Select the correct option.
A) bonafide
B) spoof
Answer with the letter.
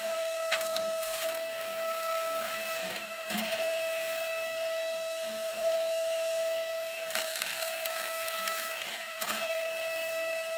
B